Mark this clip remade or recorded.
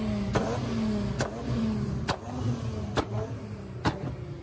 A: recorded